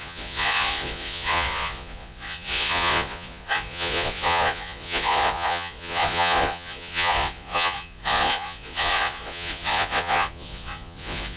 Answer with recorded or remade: remade